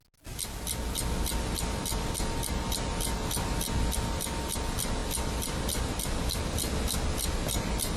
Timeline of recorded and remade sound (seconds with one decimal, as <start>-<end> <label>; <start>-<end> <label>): 0.0-8.0 recorded